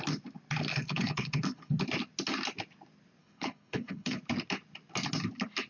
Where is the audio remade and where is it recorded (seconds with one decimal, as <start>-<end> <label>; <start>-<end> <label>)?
0.0-0.7 recorded; 0.7-1.8 remade; 1.8-3.2 recorded; 3.2-4.2 remade; 4.2-5.7 recorded